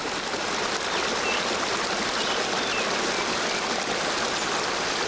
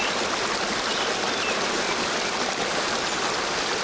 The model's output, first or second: second